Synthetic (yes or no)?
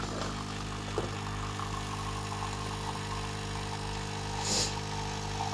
no